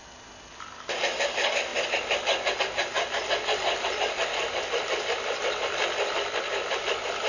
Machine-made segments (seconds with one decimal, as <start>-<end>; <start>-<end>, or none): none